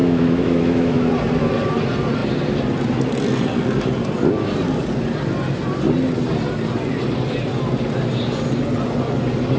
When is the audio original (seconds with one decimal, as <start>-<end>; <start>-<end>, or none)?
1.1-9.6